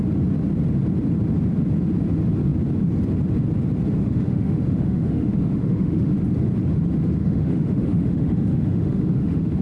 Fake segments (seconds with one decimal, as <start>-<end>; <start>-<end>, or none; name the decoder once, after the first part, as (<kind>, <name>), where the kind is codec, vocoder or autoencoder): 4.0-6.1 (autoencoder, DAC-VAE); 7.2-9.6